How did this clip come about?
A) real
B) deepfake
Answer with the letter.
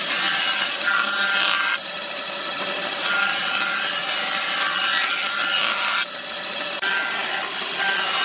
A